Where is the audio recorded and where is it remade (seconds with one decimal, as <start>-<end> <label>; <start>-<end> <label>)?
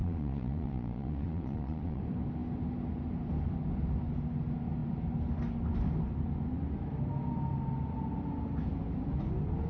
0.0-2.0 remade; 2.0-9.7 recorded